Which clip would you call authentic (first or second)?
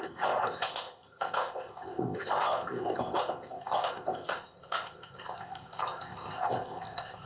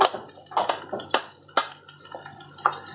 second